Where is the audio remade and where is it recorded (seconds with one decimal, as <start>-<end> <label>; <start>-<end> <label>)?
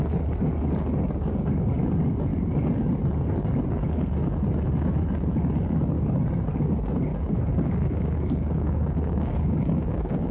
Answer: 0.0-7.1 recorded; 7.1-10.3 remade